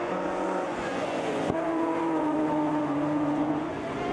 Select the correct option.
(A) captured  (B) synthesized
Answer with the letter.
B